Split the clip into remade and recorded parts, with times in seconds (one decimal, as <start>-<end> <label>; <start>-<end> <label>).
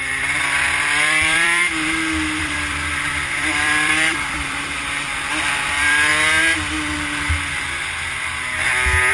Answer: 0.0-1.6 remade; 1.6-2.4 recorded; 2.4-6.1 remade; 6.1-9.1 recorded